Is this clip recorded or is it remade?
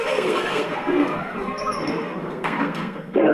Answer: remade